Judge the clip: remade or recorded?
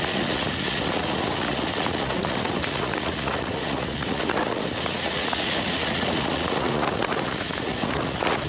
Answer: remade